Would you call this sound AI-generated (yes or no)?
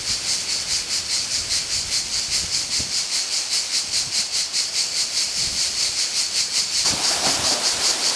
yes